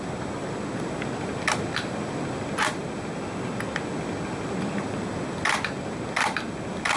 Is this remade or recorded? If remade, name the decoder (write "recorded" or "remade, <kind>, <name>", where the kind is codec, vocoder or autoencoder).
recorded